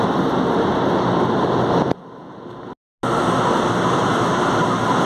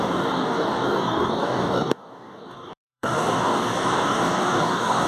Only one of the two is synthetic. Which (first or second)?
second